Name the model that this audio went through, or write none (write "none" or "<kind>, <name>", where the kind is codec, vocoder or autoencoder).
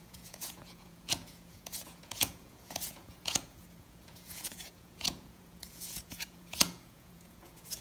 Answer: vocoder, Vocos